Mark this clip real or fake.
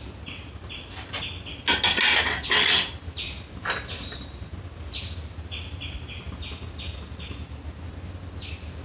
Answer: real